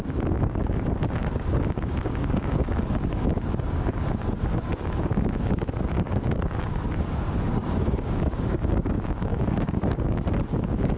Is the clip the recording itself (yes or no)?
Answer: no